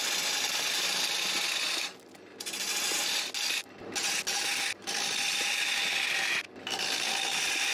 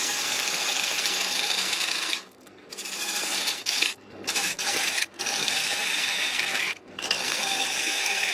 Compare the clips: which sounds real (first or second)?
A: first